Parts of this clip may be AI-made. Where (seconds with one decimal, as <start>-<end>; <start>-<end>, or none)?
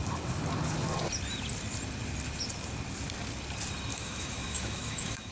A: 3.9-5.3